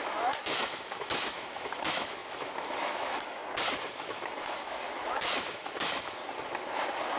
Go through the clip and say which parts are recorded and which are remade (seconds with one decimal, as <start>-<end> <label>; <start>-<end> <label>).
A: 0.0-3.4 remade; 3.4-3.9 recorded; 3.9-6.2 remade; 6.2-7.2 recorded